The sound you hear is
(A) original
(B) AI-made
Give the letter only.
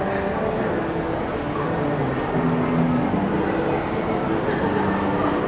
A